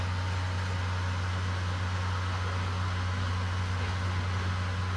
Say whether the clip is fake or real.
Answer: real